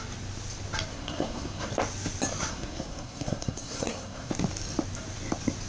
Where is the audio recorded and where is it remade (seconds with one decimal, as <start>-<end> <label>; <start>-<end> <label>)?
0.0-0.9 recorded; 0.9-1.7 remade; 1.7-2.5 recorded; 2.5-4.3 remade; 4.3-5.7 recorded